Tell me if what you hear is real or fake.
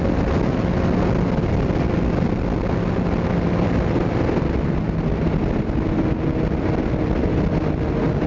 real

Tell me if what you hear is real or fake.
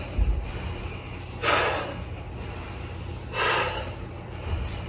real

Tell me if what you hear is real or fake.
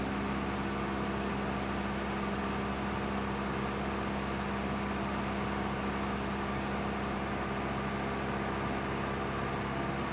real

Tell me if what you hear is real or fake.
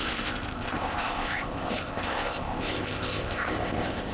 fake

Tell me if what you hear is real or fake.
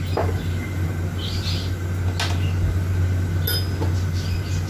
real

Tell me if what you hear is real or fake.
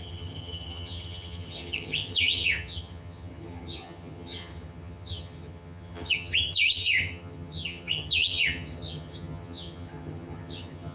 fake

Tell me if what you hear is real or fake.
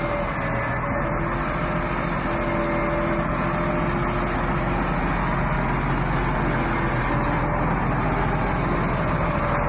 real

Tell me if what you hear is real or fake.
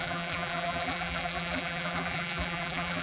fake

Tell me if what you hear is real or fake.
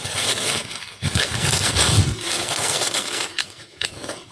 fake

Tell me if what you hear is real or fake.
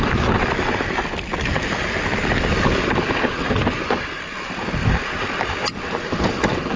real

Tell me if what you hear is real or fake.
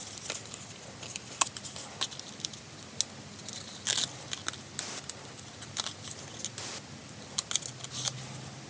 real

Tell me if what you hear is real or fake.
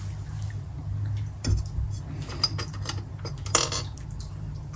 real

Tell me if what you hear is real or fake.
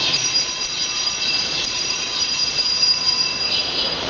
fake